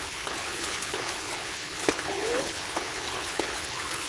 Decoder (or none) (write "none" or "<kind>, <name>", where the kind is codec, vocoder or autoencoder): codec, HILCodec